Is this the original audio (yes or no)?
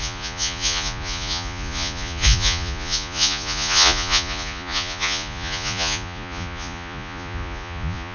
no